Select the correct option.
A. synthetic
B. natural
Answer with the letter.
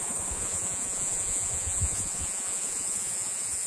A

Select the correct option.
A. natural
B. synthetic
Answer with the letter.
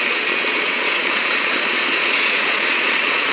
B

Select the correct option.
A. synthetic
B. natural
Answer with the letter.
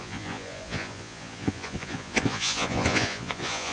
A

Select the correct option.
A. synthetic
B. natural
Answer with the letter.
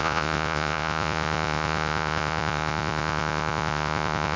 A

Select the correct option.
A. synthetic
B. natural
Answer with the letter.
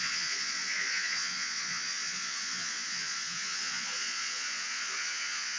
A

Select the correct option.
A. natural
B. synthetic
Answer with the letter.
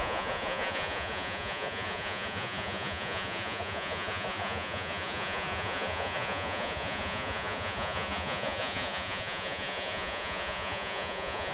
B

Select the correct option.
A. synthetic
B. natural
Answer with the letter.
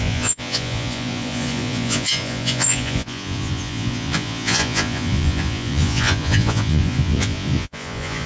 A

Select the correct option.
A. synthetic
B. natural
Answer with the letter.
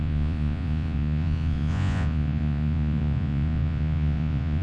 A